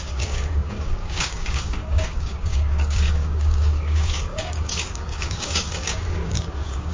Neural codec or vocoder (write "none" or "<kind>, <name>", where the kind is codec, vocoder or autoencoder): codec, DAC